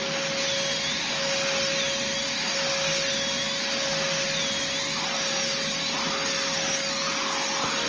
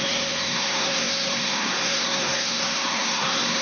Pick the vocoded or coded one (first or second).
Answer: second